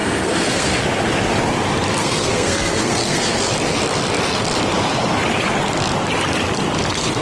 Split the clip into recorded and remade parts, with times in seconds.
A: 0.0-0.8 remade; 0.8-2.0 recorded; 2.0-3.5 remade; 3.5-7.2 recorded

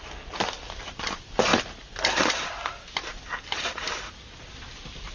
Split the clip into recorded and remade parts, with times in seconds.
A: 0.0-5.1 recorded

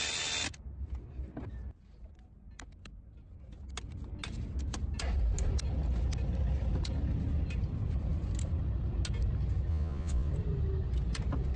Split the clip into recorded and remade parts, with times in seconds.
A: 0.0-9.7 recorded; 9.7-10.3 remade; 10.3-11.6 recorded

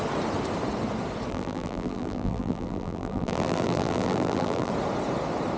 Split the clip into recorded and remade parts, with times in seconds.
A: 0.0-1.3 recorded; 1.3-4.7 remade; 4.7-5.6 recorded

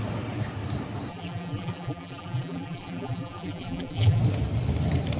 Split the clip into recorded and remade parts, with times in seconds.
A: 0.0-1.1 recorded; 1.1-4.2 remade; 4.2-5.2 recorded

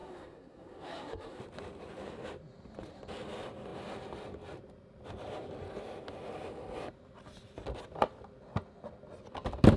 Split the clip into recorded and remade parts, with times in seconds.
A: 0.0-1.4 remade; 1.4-9.8 recorded

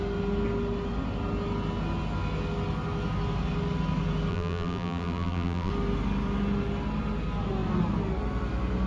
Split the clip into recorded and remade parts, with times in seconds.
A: 0.0-4.3 recorded; 4.3-5.7 remade; 5.7-8.9 recorded

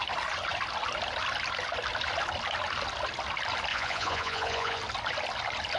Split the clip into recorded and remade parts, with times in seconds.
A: 0.0-3.7 recorded; 3.7-4.8 remade; 4.8-5.8 recorded